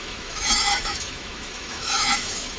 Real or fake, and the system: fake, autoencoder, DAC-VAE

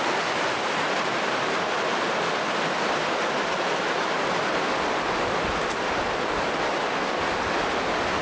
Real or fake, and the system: real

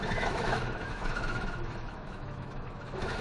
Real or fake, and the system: fake, autoencoder, DAC-VAE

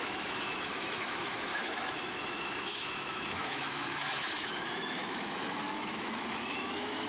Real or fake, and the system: fake, autoencoder, DAC-VAE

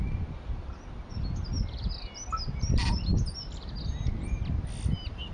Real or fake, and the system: real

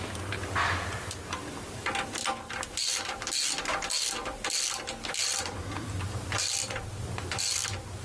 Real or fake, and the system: real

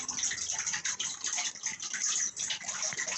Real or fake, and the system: real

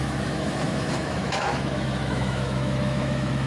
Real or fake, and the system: fake, autoencoder, DAC-VAE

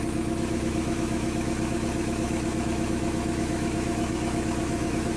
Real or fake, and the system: fake, autoencoder, DAC-VAE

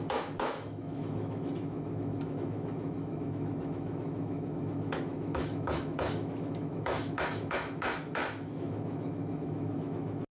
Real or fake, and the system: fake, autoencoder, DAC-VAE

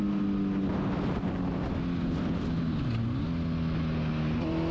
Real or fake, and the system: real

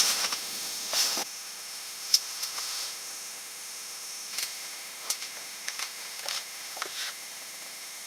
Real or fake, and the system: fake, autoencoder, DAC-VAE